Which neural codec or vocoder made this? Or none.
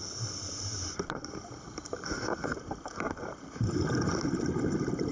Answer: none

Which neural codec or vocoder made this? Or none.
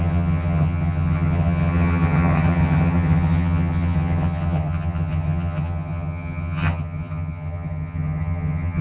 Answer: vocoder, HiFi-GAN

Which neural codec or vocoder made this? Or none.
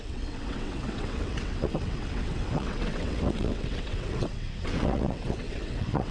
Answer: vocoder, WaveNeXt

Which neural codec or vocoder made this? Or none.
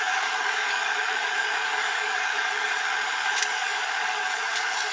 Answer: codec, DAC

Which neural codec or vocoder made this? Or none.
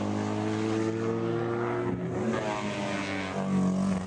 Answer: none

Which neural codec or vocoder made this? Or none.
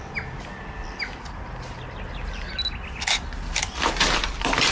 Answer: none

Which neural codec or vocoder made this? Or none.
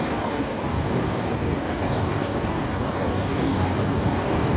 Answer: codec, DAC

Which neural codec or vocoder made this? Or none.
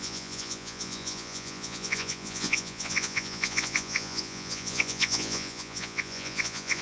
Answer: vocoder, Vocos